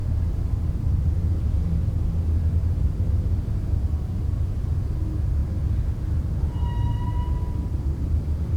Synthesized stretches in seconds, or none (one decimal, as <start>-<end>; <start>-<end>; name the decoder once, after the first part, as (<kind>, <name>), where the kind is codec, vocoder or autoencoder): 0.0-1.8 (vocoder, BigVGAN v2)

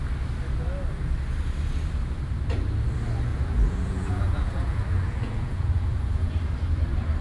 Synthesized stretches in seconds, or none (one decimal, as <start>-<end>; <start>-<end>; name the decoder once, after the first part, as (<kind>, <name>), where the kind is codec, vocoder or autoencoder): 3.3-6.3 (vocoder, BigVGAN v2)

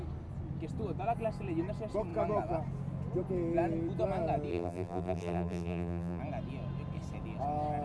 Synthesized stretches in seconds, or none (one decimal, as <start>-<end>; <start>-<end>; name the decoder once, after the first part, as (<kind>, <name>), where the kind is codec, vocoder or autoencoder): 4.5-6.2 (vocoder, BigVGAN v2)

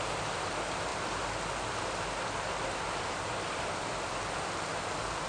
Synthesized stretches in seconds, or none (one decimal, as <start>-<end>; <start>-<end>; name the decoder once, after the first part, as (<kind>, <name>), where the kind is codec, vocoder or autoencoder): none

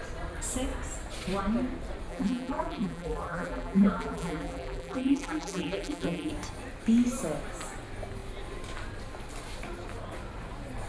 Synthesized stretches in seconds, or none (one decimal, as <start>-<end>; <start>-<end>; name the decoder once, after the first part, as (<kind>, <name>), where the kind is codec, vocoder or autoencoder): 2.1-6.3 (vocoder, BigVGAN v2)

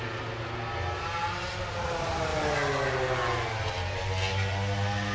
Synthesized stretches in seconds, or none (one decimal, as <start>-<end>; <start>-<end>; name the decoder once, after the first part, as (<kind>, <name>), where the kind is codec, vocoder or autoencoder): none